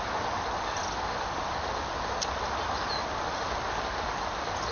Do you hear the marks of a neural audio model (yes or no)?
no